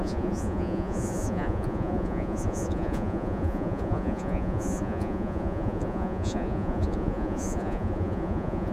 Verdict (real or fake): fake